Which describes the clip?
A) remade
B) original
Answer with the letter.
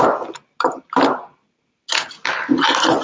B